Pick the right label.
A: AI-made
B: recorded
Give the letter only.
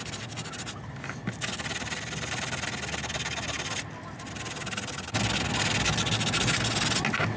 B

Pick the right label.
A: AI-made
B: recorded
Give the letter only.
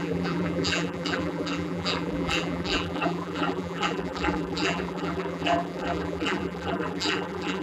A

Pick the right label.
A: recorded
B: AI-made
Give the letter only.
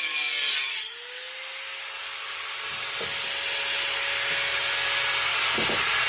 A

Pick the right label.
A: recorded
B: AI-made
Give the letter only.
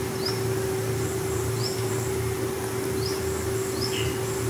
A